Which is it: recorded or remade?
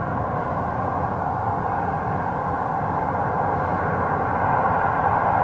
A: recorded